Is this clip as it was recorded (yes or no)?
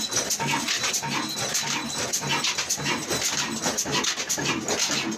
yes